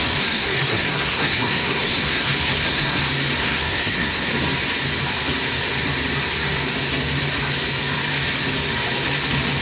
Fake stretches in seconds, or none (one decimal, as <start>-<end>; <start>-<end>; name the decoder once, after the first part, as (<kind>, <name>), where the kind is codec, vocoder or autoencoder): 0.0-3.0 (codec, SNAC); 3.4-4.3